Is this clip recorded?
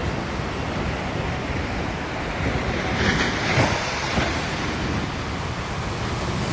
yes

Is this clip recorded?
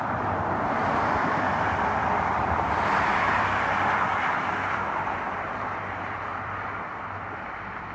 no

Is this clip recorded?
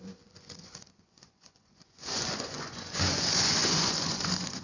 no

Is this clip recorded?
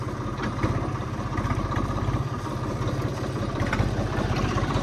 no